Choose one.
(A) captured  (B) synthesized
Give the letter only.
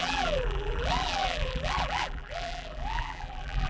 B